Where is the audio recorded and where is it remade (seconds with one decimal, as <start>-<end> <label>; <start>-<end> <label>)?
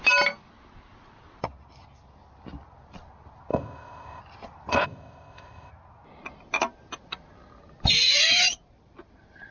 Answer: 0.0-3.5 recorded; 3.5-4.2 remade; 4.2-4.7 recorded; 4.7-5.7 remade; 5.7-9.5 recorded